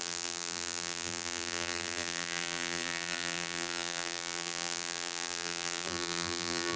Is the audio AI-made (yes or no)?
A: yes